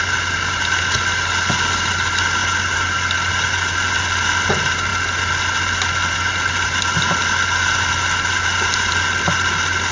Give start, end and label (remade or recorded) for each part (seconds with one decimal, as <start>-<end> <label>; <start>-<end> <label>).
0.0-9.9 recorded